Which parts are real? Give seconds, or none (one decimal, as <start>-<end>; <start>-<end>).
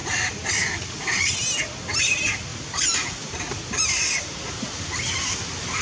1.3-2.5; 4.4-5.8